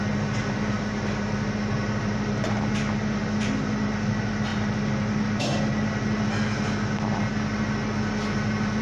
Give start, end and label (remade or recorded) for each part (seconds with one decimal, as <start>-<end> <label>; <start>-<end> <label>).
0.0-8.8 recorded